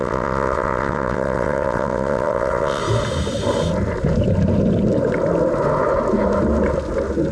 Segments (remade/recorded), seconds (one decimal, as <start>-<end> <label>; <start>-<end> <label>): 0.0-2.8 remade; 2.8-7.3 recorded